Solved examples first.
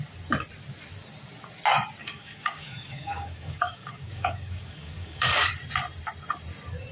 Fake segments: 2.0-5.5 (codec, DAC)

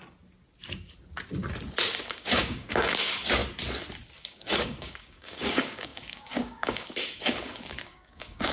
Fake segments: 2.0-3.4 (codec, DAC); 4.2-8.5

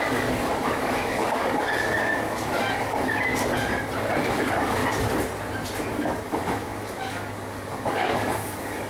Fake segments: 0.0-3.3 (codec, DAC); 4.0-4.8; 5.9-8.9

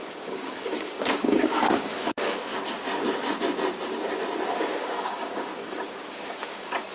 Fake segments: 0.0-2.5 (codec, DAC); 4.5-6.9

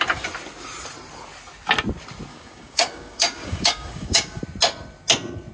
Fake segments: 2.3-4.4 (codec, DAC)